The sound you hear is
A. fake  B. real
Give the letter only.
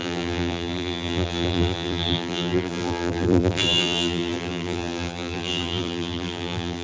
A